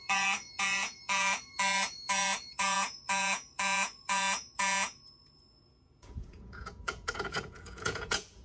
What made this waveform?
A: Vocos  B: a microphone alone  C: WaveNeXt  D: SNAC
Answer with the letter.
A